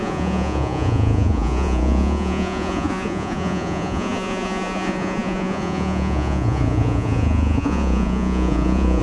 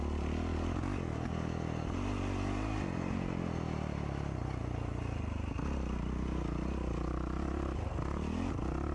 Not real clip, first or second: first